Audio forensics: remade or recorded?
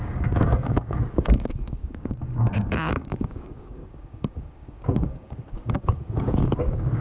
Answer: remade